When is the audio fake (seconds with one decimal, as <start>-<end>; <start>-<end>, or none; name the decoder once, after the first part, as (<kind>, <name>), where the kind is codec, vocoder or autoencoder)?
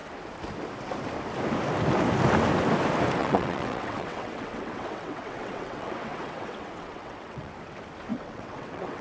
3.2-7.5 (vocoder, WaveNeXt); 8.1-9.0